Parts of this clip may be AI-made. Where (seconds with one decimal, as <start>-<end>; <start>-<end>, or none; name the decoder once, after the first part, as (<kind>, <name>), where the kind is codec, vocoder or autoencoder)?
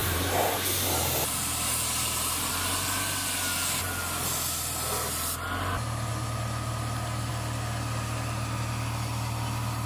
0.0-2.5 (vocoder, BigVGAN v2)